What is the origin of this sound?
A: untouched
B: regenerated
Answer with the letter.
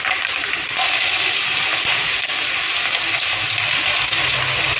A